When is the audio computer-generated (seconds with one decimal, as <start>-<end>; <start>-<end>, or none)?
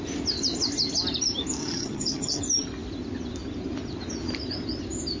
1.6-2.4